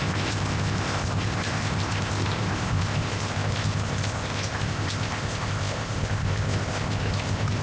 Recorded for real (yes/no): no